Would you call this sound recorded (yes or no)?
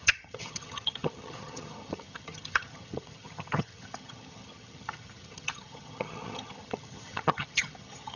no